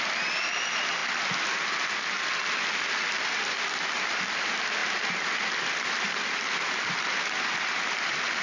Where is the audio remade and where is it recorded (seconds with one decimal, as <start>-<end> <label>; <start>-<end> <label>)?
0.0-8.4 recorded